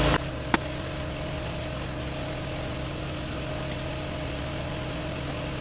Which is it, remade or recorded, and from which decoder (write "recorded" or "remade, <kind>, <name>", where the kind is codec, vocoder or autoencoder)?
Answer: recorded